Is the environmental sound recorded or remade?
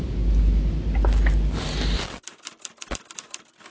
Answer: recorded